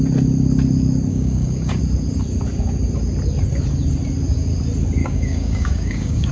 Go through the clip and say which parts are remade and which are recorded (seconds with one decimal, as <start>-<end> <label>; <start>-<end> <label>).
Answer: 0.0-1.1 recorded; 1.1-1.8 remade; 1.8-5.0 recorded; 5.0-6.3 remade